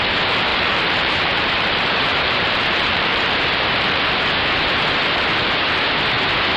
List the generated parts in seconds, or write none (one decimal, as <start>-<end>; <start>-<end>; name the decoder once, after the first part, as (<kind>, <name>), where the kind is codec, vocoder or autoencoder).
0.5-4.0 (vocoder, BigVGAN v2)